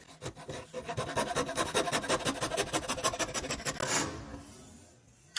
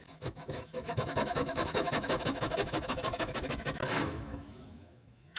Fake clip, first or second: second